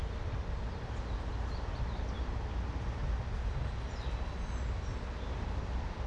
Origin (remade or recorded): recorded